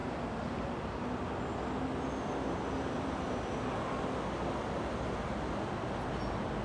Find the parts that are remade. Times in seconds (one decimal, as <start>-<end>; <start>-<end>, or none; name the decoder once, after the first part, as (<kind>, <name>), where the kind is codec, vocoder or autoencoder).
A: none